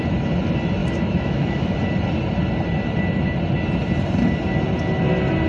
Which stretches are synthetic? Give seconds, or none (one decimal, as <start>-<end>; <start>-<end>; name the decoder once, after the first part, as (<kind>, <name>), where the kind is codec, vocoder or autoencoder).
0.8-1.7 (autoencoder, DAC-VAE)